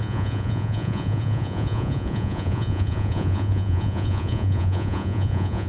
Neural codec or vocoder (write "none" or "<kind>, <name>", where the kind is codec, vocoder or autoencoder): vocoder, Vocos